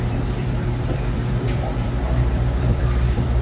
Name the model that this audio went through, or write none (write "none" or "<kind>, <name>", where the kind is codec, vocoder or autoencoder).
vocoder, BigVGAN v2